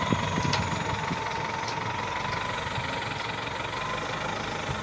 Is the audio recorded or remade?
recorded